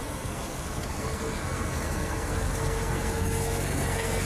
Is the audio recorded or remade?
remade